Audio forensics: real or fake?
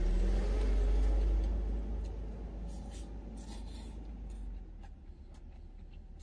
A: real